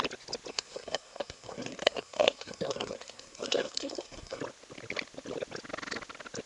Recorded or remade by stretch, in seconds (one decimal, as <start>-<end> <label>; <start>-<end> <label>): 0.0-0.5 recorded; 0.5-4.4 remade; 4.4-6.5 recorded